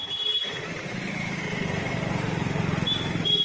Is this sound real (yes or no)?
no